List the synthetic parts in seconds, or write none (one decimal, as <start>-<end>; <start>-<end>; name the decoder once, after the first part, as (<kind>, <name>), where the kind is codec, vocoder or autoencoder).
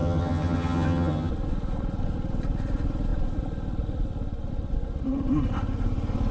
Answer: 0.0-1.3 (vocoder, HiFi-GAN)